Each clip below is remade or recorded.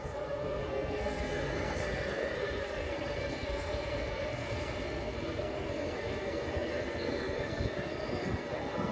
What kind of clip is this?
remade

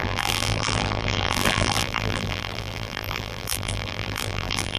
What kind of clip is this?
remade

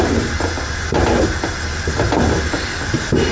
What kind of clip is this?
recorded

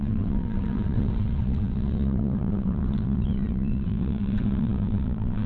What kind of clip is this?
remade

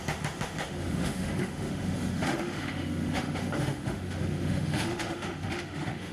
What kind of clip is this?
remade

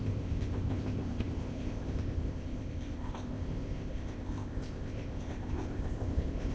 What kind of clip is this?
remade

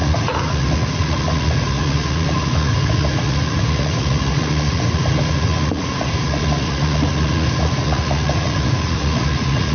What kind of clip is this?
remade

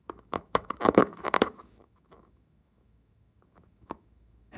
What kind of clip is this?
remade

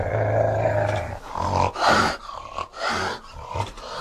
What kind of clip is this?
recorded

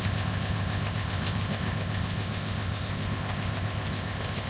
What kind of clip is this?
remade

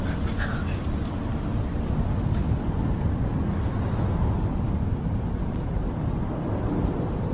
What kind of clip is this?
recorded